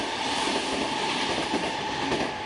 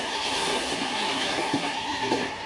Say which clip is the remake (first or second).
second